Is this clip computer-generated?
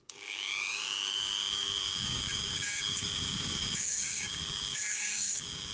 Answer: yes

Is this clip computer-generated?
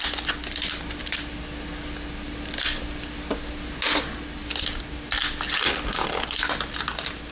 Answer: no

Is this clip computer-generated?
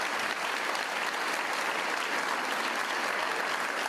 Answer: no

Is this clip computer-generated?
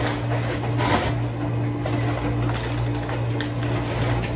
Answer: no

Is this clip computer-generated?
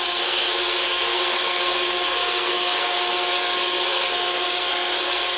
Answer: yes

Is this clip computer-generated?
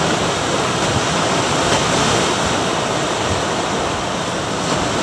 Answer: no